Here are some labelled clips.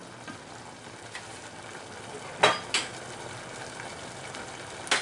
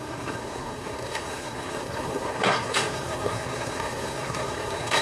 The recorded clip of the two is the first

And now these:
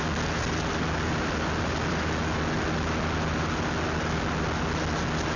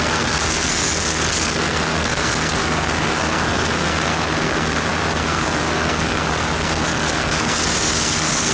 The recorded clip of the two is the first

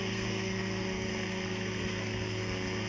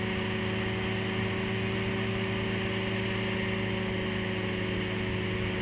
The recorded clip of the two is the second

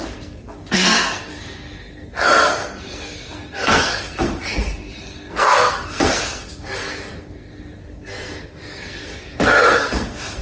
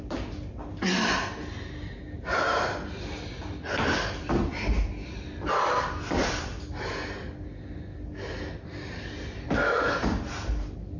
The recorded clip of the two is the second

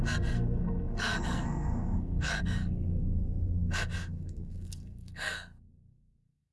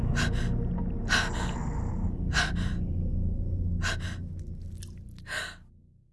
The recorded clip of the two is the second